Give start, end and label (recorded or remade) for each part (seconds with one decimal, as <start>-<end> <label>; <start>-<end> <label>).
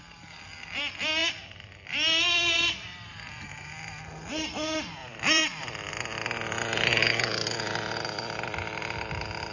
0.0-1.2 recorded; 1.2-3.4 remade; 3.4-5.0 recorded; 5.0-5.9 remade; 5.9-9.5 recorded